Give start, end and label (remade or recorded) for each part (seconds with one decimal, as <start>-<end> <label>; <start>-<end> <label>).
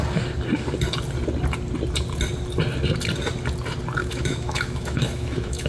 0.0-4.0 recorded; 4.0-5.7 remade